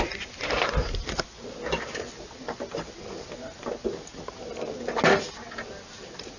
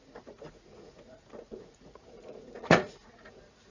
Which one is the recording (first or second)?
first